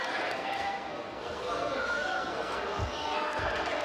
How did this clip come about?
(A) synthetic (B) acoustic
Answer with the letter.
A